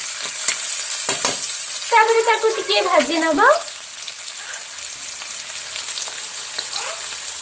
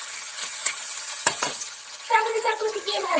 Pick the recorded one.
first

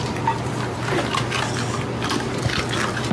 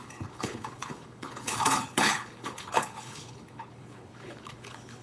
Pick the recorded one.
first